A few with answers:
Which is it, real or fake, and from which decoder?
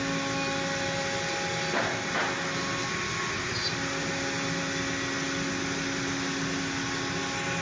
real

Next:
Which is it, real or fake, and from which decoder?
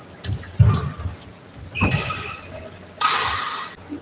real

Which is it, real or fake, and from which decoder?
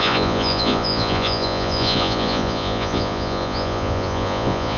fake, vocoder, Vocos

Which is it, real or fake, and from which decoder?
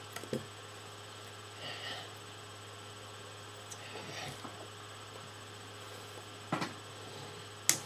real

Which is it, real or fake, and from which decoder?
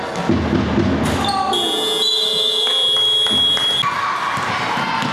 real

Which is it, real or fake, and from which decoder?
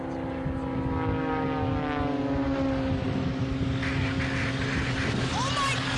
real